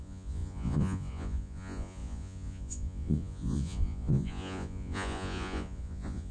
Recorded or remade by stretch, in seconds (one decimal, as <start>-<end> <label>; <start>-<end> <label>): 0.0-6.3 remade